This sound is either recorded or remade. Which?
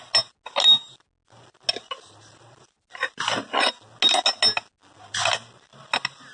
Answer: recorded